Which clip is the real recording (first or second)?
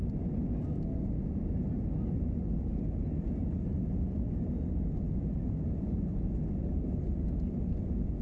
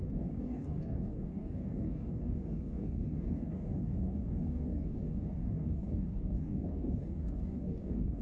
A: first